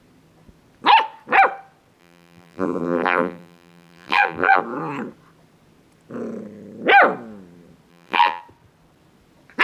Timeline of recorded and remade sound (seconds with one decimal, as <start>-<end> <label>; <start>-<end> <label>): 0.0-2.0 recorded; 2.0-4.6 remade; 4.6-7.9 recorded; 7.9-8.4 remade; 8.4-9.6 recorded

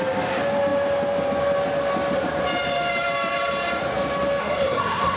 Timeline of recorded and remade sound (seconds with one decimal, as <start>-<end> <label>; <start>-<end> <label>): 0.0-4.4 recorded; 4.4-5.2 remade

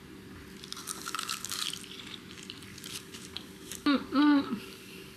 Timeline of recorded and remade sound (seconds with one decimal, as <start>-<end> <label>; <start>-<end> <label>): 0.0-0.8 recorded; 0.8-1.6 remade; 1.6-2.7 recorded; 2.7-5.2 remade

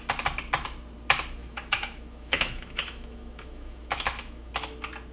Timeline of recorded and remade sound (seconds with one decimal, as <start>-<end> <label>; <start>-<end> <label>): 0.0-1.4 recorded; 1.4-4.5 remade; 4.5-5.1 recorded

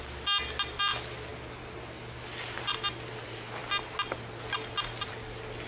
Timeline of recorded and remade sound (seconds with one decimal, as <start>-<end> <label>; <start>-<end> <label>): 0.0-1.3 recorded; 1.3-1.9 remade; 1.9-5.7 recorded

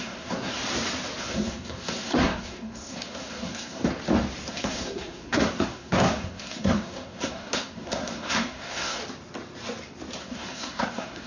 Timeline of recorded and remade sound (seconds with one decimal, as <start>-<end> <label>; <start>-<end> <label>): 0.0-0.6 remade; 0.6-1.2 recorded; 1.2-3.8 remade; 3.8-4.5 recorded; 4.5-9.0 remade; 9.0-10.2 recorded; 10.2-11.3 remade

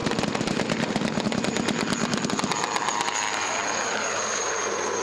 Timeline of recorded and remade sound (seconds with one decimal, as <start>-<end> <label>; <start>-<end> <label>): 0.0-5.0 recorded

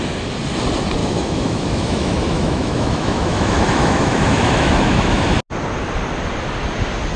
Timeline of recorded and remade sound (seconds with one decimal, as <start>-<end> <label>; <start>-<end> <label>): 0.0-1.0 recorded; 1.0-5.3 remade; 5.3-7.2 recorded